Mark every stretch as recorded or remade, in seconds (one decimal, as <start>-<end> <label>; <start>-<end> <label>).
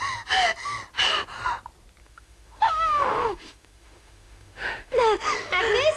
0.0-2.0 recorded; 2.0-5.6 remade; 5.6-6.0 recorded